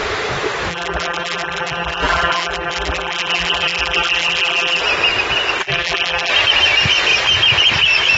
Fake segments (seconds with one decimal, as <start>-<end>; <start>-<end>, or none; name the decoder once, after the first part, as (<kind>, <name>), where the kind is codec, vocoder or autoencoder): 0.7-4.8 (vocoder, BigVGAN v2); 5.6-6.3